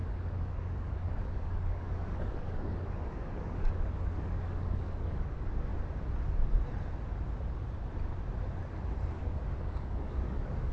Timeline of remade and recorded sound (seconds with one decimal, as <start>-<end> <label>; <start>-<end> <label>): 0.0-5.7 remade; 5.7-9.1 recorded; 9.1-10.7 remade